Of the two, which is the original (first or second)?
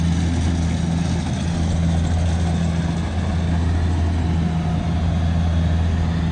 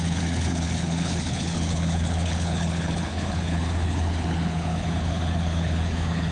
first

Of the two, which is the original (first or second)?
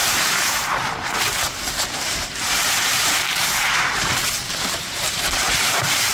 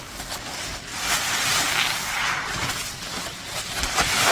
second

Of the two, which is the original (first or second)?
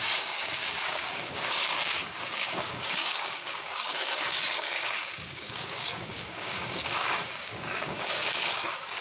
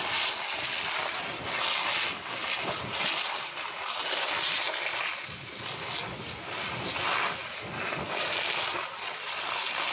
second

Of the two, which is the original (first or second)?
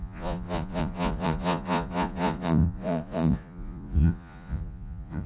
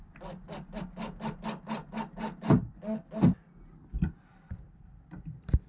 second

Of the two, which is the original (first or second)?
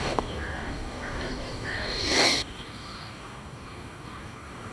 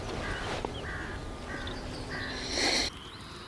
second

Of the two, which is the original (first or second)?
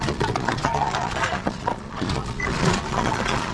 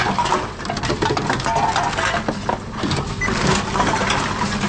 second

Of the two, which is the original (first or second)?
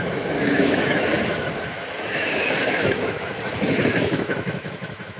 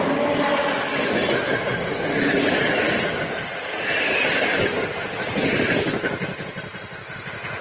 second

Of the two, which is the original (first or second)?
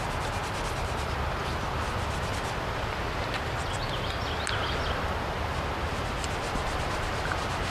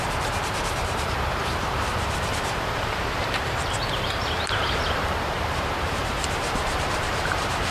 first